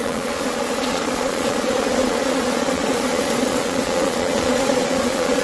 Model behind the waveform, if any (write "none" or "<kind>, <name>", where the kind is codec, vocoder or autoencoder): vocoder, Vocos